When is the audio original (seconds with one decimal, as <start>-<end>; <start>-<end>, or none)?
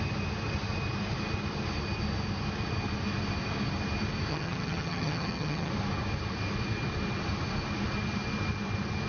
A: 0.0-4.3; 5.7-9.1